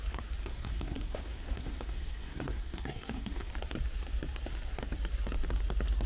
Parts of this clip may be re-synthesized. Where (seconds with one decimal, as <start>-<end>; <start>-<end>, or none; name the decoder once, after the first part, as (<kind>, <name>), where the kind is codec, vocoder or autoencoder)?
0.4-3.5 (codec, SNAC)